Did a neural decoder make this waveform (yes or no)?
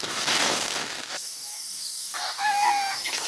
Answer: yes